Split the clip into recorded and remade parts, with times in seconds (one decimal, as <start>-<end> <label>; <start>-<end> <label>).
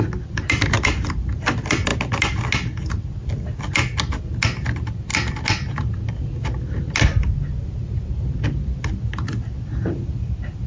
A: 0.0-10.7 recorded